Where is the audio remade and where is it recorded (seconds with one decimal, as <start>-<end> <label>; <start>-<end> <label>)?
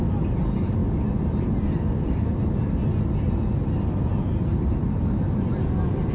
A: 0.0-6.1 recorded